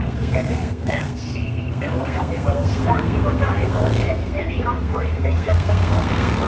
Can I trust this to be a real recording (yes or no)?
no